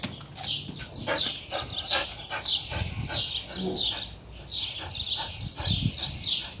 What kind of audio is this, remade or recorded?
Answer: recorded